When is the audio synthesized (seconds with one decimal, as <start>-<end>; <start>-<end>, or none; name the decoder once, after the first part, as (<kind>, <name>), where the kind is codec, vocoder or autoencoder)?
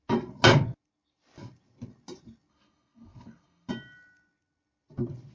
2.5-3.7 (codec, HILCodec)